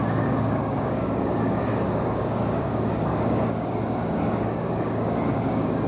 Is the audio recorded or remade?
remade